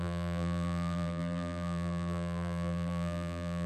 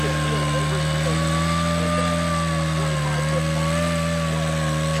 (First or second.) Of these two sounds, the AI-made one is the first